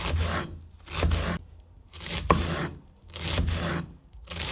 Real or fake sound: real